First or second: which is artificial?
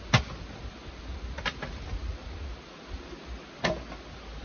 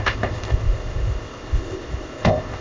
second